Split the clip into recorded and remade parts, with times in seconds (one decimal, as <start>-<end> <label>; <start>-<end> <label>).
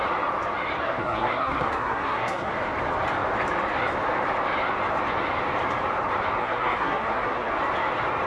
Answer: 0.0-0.8 recorded; 0.8-2.5 remade; 2.5-6.4 recorded; 6.4-7.5 remade; 7.5-8.3 recorded